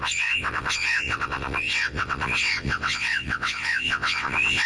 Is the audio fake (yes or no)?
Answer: yes